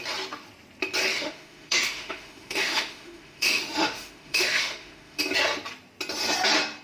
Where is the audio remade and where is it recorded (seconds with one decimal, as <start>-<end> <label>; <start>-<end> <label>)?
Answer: 0.0-1.1 recorded; 1.1-5.2 remade; 5.2-6.8 recorded